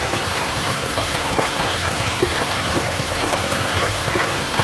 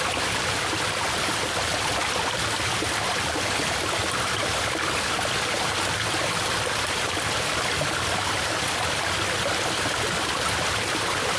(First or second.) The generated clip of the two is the first